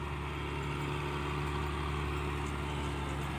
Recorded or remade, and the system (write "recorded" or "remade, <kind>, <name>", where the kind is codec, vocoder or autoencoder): recorded